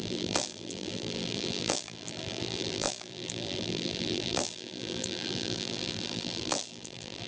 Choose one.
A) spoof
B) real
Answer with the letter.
A